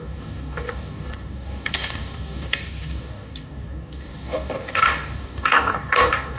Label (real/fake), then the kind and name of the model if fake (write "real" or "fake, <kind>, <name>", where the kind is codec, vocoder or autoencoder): fake, codec, DAC